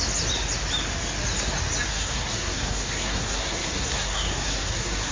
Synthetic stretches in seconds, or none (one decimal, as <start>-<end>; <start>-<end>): 1.9-5.1